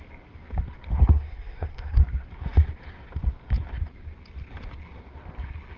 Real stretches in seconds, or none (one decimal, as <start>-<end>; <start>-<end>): 0.0-1.0; 2.0-5.8